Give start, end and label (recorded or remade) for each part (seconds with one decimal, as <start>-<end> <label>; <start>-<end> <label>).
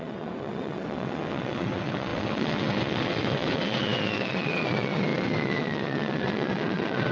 0.0-7.1 remade